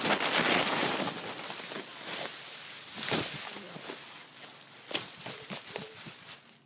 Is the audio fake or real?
real